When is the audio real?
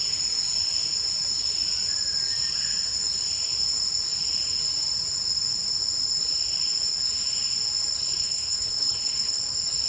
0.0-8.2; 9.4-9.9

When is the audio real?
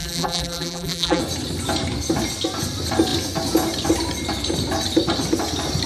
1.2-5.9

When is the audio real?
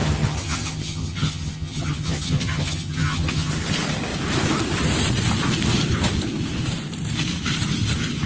3.5-8.3